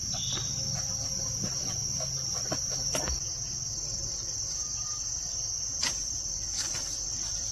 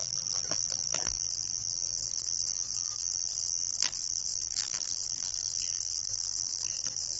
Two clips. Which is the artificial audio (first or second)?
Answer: second